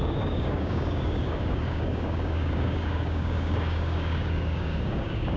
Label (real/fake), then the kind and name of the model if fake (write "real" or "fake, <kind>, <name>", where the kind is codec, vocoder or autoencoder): fake, codec, DAC